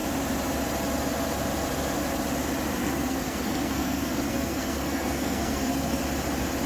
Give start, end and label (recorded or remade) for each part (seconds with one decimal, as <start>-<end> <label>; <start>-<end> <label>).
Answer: 0.0-2.8 recorded; 2.8-6.0 remade; 6.0-6.7 recorded